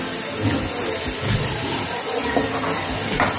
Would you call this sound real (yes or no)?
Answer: yes